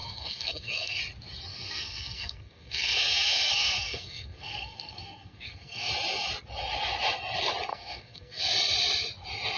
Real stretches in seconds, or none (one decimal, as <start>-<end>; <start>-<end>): 1.0-1.5; 5.9-7.7; 8.4-9.6